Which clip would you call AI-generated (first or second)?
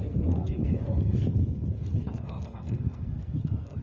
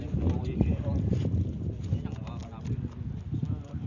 first